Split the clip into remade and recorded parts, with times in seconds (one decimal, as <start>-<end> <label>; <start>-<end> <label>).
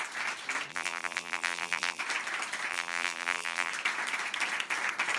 0.0-0.7 recorded; 0.7-2.0 remade; 2.0-2.7 recorded; 2.7-3.7 remade; 3.7-5.2 recorded